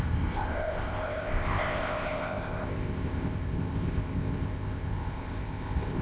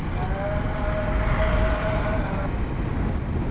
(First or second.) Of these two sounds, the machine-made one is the first